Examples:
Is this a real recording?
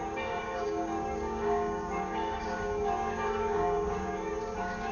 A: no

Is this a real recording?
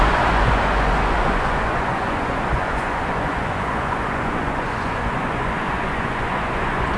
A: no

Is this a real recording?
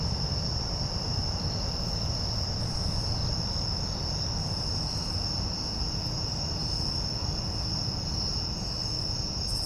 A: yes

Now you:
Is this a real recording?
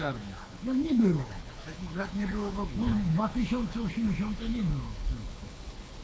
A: no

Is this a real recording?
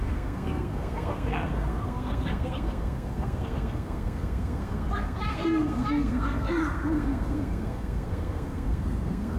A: no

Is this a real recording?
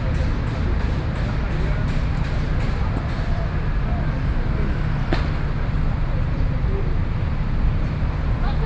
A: yes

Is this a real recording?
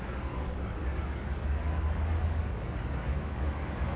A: no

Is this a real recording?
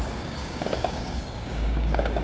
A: no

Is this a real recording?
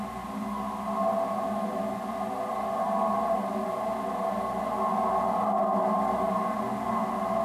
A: yes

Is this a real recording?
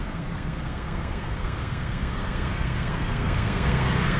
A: no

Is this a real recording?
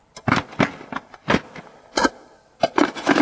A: yes